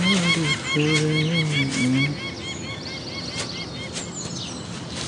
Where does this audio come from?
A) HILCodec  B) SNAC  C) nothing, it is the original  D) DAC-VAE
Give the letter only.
C